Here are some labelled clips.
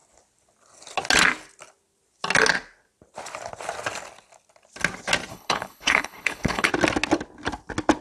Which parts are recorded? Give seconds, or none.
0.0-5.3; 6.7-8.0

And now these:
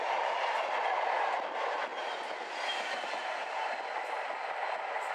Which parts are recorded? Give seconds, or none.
0.0-5.1